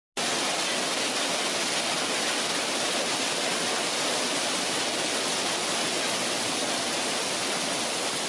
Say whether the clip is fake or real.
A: real